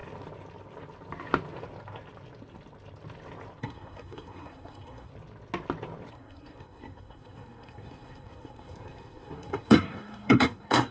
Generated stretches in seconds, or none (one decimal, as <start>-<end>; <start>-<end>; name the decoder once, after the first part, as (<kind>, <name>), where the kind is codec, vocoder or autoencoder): 3.6-5.1 (codec, SNAC); 6.1-10.9